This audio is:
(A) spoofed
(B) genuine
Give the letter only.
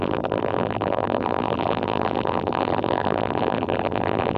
A